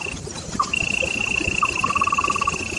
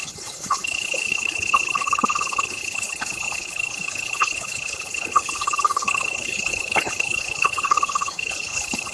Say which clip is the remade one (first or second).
second